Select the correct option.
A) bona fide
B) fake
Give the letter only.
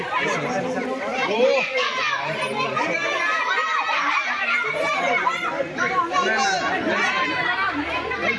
A